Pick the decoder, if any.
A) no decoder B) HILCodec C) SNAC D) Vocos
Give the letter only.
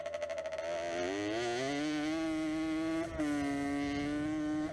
A